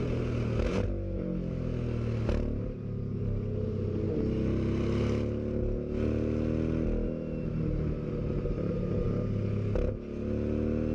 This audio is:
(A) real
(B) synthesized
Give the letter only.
A